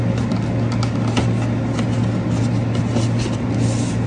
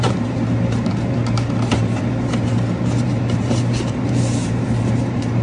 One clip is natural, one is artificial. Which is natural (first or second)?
first